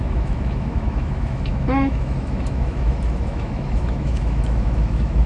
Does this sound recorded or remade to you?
remade